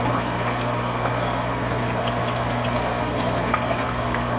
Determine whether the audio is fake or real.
fake